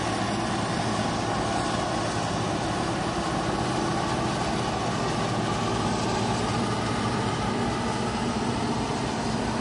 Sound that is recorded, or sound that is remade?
recorded